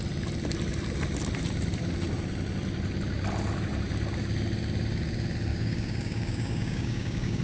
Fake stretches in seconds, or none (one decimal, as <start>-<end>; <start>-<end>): 5.5-7.4